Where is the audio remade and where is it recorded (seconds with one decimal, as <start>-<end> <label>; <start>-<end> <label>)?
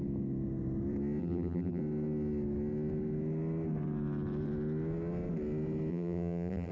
0.0-1.2 recorded; 1.2-1.8 remade; 1.8-5.9 recorded; 5.9-6.7 remade